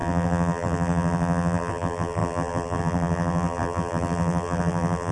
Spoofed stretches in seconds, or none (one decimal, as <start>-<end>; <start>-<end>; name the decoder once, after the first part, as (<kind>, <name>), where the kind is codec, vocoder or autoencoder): 0.0-5.1 (vocoder, BigVGAN v2)